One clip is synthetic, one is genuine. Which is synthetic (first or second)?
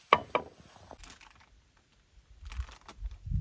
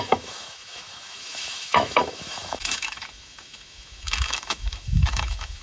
second